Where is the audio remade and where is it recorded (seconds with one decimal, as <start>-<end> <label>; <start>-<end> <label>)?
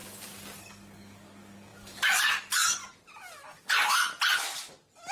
0.0-0.6 recorded; 0.6-2.8 remade; 2.8-5.1 recorded